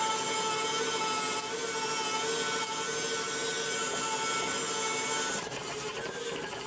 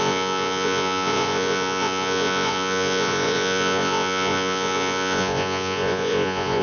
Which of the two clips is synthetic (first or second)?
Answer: second